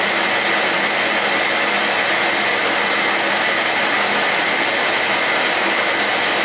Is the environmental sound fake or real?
real